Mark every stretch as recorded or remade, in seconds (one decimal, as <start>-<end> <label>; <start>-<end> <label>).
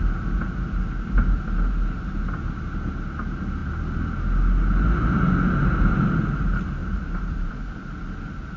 0.0-6.8 recorded; 6.8-7.5 remade; 7.5-8.6 recorded